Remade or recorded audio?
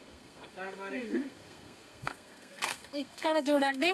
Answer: remade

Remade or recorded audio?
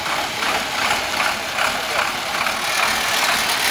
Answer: recorded